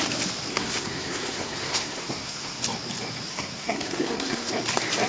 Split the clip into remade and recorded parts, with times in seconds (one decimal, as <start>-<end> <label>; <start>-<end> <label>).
0.0-0.5 recorded; 0.5-2.6 remade; 2.6-3.3 recorded; 3.3-4.5 remade; 4.5-5.1 recorded